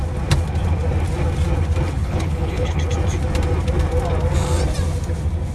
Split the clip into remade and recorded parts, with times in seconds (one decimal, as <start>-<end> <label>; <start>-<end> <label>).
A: 0.0-2.0 recorded; 2.0-2.8 remade; 2.8-5.5 recorded